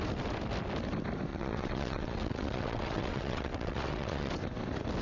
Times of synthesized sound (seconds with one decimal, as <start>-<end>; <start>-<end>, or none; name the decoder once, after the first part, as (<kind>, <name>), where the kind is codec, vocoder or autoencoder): 1.3-4.3 (vocoder, WaveNeXt)